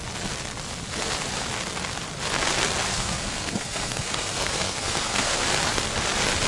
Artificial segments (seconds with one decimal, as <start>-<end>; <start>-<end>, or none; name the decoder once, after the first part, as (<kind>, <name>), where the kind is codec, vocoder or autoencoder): 2.9-5.5 (codec, SNAC)